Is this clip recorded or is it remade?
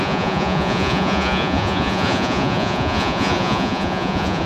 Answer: remade